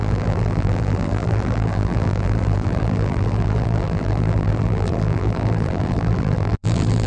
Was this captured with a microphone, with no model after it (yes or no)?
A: no